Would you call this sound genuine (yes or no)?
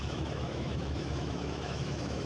no